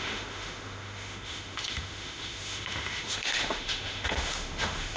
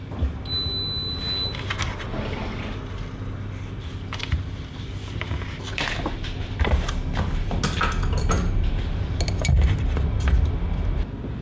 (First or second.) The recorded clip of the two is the second